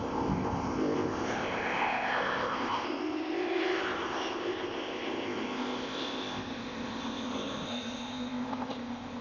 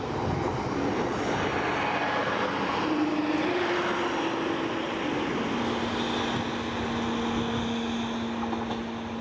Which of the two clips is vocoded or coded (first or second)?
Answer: first